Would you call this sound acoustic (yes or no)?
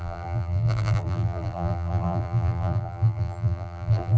no